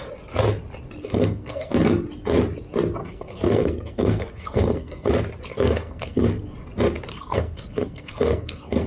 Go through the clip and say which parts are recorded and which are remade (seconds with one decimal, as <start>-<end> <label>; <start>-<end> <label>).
0.0-1.0 recorded; 1.0-1.7 remade; 1.7-3.0 recorded; 3.0-5.1 remade; 5.1-5.5 recorded; 5.5-6.3 remade; 6.3-7.1 recorded; 7.1-8.9 remade